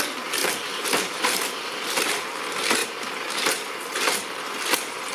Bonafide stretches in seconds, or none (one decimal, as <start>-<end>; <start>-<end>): 0.0-0.4; 2.4-2.8